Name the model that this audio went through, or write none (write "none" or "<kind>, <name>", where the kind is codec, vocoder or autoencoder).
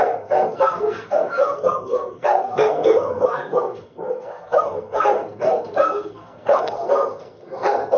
codec, SNAC